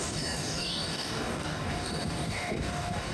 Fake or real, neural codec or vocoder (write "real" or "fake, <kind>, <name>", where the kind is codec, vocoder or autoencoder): fake, codec, DAC